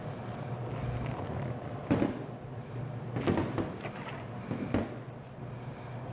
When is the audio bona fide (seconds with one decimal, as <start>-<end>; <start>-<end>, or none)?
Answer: 0.0-1.6; 5.3-6.1